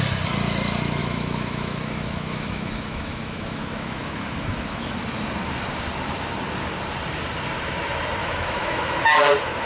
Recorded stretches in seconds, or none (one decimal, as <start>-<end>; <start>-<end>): 0.0-1.0; 4.9-8.2; 9.0-9.7